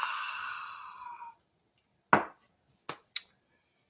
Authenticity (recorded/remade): recorded